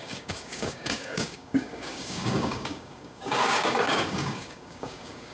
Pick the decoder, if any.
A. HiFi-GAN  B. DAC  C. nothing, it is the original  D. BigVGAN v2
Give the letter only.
B